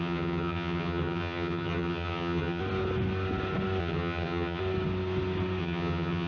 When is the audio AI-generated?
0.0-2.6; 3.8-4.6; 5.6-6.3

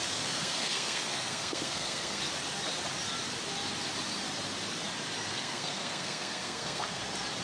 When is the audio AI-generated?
0.0-2.2; 5.3-7.0

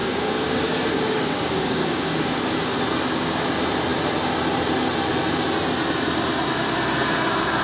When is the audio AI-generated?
0.0-2.8

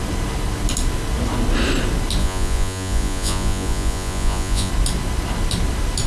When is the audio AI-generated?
2.2-4.7

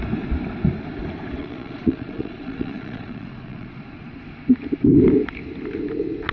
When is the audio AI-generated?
1.4-4.2

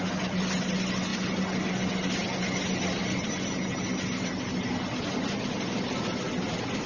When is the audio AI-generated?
none

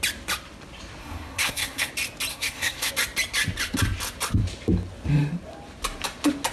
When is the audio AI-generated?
1.0-1.9; 2.3-2.9

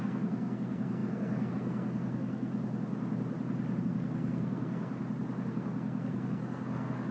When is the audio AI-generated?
0.0-2.5; 3.8-4.9; 5.5-7.1